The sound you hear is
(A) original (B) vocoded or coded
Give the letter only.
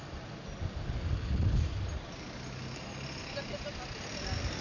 A